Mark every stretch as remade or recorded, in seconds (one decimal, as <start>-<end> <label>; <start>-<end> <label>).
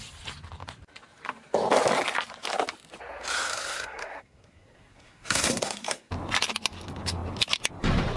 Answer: 0.0-3.5 recorded; 3.5-6.1 remade; 6.1-8.2 recorded